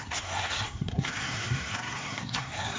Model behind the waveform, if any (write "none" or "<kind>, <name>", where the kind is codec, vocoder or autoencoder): codec, SNAC